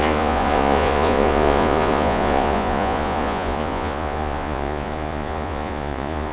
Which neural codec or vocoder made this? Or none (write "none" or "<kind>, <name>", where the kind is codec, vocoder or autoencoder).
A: vocoder, Vocos